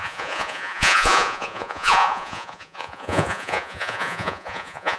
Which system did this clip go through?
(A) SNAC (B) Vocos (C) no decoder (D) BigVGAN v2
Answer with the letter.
B